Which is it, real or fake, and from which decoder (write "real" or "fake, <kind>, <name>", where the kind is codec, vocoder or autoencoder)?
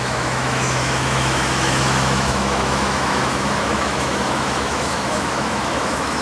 fake, autoencoder, DAC-VAE